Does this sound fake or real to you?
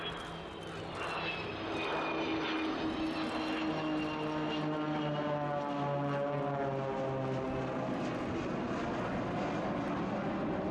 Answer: real